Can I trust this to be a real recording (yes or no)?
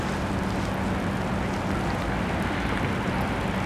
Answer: yes